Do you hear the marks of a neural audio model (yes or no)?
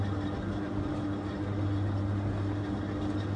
no